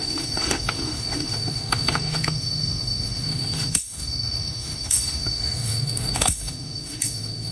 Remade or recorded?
remade